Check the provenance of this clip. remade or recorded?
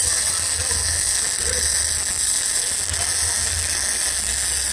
recorded